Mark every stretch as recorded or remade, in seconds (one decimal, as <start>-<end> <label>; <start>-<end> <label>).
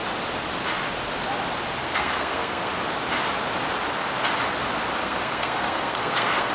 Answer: 0.0-1.8 recorded; 1.8-2.7 remade; 2.7-5.0 recorded; 5.0-6.5 remade